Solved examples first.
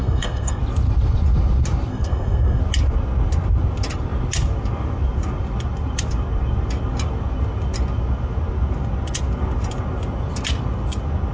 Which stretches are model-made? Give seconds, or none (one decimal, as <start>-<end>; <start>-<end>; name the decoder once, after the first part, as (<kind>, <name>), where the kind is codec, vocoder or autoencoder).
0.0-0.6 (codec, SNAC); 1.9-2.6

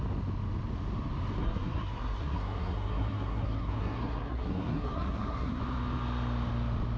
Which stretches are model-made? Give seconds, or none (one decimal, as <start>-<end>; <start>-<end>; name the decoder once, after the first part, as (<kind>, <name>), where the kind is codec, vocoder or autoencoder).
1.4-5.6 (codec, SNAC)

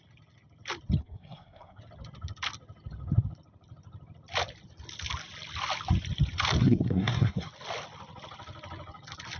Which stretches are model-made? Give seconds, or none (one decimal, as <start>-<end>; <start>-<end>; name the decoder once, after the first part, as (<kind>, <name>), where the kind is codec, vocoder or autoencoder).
1.0-1.8 (codec, SNAC); 6.6-7.5

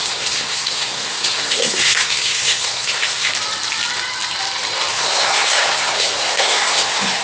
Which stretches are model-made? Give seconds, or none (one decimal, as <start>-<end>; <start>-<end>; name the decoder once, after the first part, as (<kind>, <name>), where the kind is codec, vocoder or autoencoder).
0.0-3.3 (codec, SNAC); 4.9-7.2